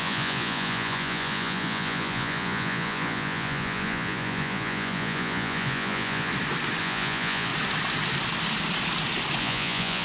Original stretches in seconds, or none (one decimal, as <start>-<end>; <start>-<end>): 6.3-6.8; 7.5-9.4

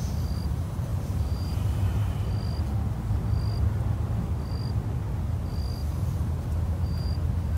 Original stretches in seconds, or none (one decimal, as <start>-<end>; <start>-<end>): 0.0-0.9; 2.1-5.8; 7.1-7.6

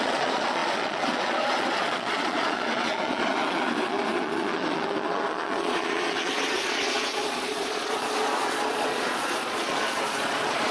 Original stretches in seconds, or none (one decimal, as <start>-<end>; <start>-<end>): none

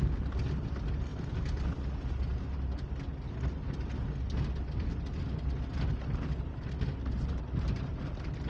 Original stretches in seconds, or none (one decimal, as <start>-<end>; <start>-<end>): 0.0-7.0